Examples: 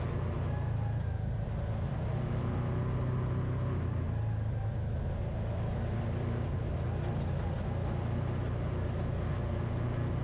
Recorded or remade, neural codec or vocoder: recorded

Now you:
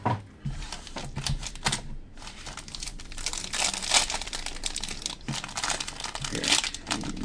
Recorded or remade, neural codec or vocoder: recorded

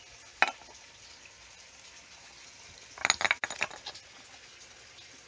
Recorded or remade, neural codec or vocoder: recorded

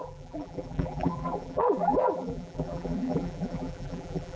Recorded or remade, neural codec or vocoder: remade, vocoder, BigVGAN v2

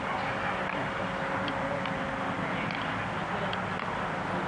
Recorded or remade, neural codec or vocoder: recorded